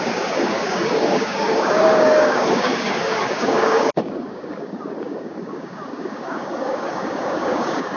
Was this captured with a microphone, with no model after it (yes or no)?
no